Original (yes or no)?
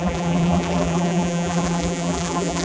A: no